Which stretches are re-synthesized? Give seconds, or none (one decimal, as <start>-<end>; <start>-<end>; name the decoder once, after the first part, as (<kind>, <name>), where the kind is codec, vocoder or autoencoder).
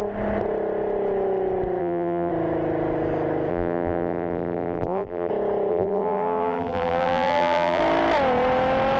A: 1.8-2.3 (vocoder, BigVGAN v2); 3.5-5.3; 5.7-7.8